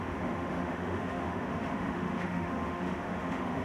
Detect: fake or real fake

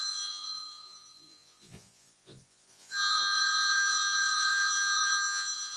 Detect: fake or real fake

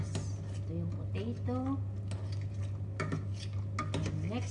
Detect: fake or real real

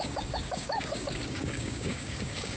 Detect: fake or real fake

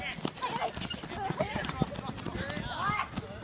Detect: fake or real real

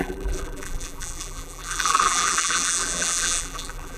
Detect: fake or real fake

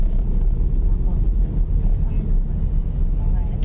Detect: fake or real real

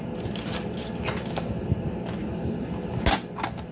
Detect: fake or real real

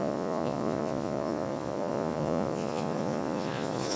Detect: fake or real fake